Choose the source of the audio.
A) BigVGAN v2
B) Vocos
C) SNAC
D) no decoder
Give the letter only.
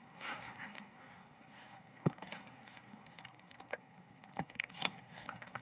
C